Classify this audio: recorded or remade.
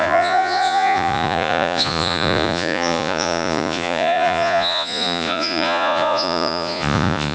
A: remade